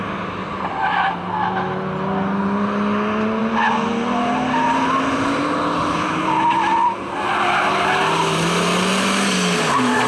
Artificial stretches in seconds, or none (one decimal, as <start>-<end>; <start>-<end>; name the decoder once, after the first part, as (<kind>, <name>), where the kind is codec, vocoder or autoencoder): none